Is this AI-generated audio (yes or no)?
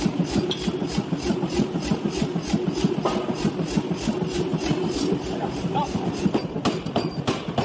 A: no